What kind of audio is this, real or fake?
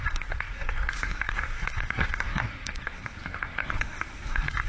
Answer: fake